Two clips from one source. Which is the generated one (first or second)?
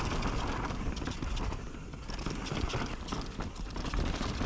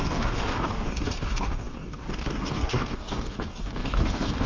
second